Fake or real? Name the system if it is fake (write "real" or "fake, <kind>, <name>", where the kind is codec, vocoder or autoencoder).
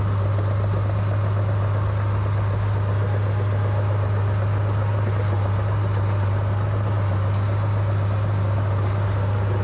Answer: real